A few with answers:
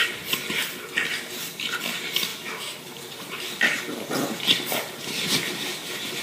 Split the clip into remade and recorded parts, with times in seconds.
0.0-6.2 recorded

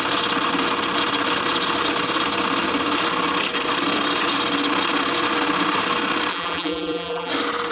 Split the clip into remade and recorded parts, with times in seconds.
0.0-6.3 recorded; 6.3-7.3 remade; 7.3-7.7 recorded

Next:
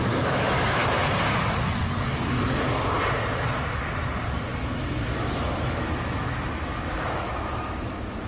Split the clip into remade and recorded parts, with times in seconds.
0.0-0.8 remade; 0.8-4.6 recorded; 4.6-8.3 remade

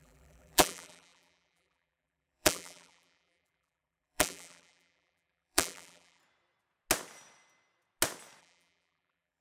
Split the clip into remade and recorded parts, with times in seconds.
0.0-6.2 remade; 6.2-8.4 recorded; 8.4-9.4 remade